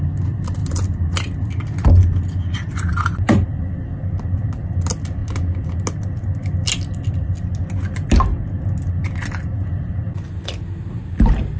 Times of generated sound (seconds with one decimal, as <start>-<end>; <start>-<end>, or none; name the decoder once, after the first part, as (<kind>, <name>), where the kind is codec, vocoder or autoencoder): 0.6-1.5 (vocoder, BigVGAN v2); 2.7-3.5